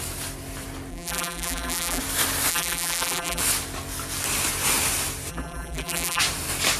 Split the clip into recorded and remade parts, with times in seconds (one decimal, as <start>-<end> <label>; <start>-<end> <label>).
0.0-0.9 recorded; 0.9-2.0 remade; 2.0-2.5 recorded; 2.5-3.4 remade; 3.4-5.3 recorded; 5.3-6.2 remade; 6.2-6.8 recorded